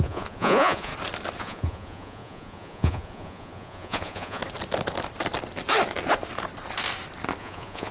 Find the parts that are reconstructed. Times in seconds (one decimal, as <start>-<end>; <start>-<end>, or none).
0.0-0.9; 1.4-4.4; 7.4-7.9